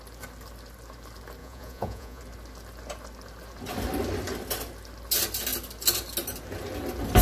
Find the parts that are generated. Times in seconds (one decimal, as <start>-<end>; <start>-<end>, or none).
1.4-2.2